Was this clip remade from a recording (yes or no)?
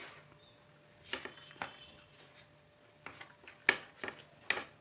no